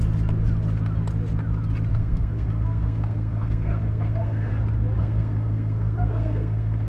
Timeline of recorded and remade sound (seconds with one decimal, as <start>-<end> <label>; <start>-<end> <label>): 0.0-1.9 recorded; 1.9-4.5 remade; 4.5-5.0 recorded; 5.0-6.9 remade